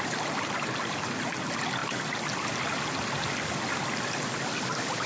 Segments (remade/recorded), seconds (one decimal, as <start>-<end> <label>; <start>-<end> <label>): 0.0-5.1 recorded